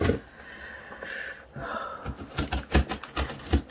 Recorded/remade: recorded